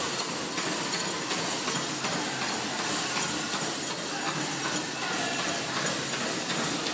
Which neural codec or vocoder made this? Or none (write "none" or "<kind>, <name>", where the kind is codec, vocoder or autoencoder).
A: none